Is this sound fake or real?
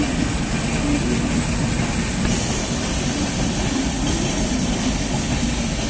real